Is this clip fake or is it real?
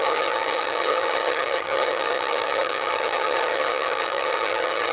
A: fake